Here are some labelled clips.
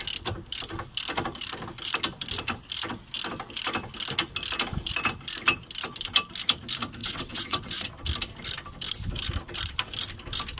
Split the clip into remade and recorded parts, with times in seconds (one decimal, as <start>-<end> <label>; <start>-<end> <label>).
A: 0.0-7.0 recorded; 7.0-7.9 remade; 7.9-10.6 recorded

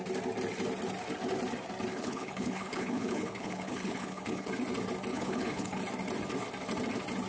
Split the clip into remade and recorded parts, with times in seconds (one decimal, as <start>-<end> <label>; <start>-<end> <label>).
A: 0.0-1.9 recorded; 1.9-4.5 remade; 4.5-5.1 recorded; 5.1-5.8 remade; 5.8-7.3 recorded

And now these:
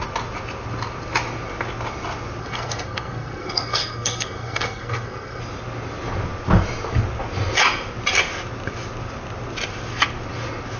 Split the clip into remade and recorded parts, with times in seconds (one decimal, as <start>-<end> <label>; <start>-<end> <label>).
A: 0.0-2.4 recorded; 2.4-5.4 remade; 5.4-10.8 recorded